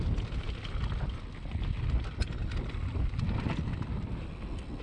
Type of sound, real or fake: real